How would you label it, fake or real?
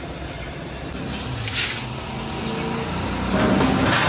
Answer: real